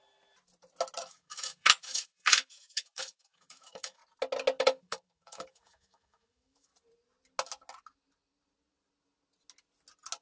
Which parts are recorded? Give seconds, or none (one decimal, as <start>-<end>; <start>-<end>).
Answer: 0.0-1.0; 4.0-4.6; 6.7-10.2